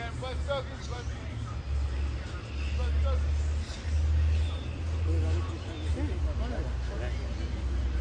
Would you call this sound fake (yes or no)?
no